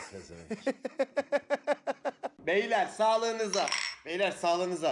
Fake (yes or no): no